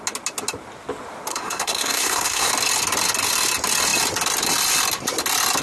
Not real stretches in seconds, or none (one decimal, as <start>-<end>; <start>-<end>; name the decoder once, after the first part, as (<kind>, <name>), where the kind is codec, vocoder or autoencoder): 1.3-2.5 (codec, SNAC)